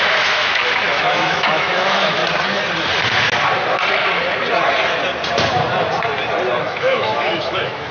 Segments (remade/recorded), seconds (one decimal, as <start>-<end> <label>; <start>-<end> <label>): 0.0-2.2 remade; 2.2-6.6 recorded; 6.6-7.9 remade